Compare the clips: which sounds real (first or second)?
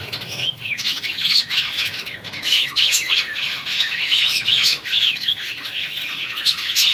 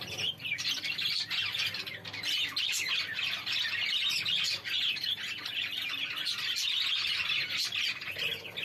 second